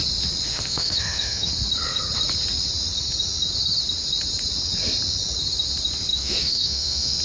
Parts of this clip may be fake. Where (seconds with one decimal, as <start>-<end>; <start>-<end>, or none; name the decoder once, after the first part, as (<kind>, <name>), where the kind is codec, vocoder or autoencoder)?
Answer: 0.5-1.5 (autoencoder, DAC-VAE); 6.1-7.2